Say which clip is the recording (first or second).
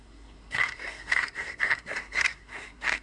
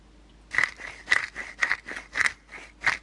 second